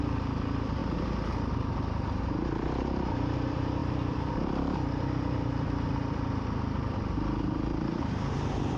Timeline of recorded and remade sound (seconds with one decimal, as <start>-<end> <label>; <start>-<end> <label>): 0.0-0.8 remade; 0.8-1.5 recorded; 1.5-8.8 remade